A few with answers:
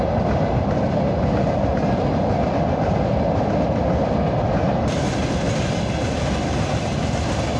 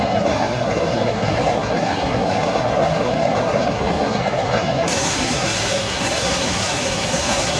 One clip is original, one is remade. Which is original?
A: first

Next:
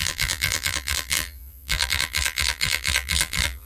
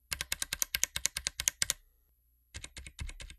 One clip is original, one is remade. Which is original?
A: second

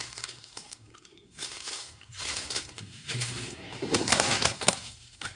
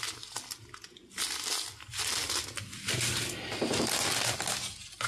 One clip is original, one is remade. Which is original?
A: second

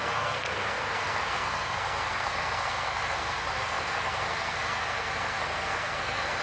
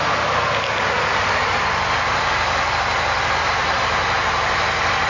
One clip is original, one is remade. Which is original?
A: second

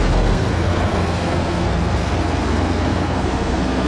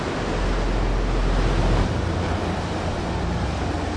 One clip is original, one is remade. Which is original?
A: second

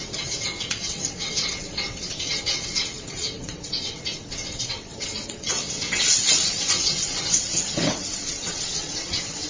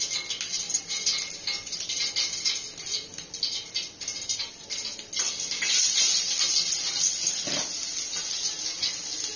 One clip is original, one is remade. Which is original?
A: second